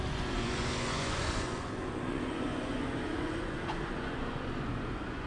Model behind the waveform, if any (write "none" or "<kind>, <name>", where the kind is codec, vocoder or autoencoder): vocoder, Vocos